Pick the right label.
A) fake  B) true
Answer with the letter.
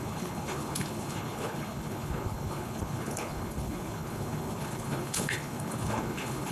A